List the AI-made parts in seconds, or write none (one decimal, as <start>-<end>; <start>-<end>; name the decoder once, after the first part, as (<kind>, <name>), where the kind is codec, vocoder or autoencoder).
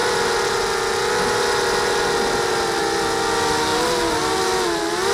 none